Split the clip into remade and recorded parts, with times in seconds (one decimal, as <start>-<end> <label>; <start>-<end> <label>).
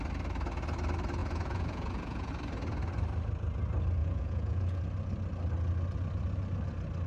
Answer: 0.0-1.2 recorded; 1.2-2.3 remade; 2.3-4.0 recorded; 4.0-4.8 remade; 4.8-7.1 recorded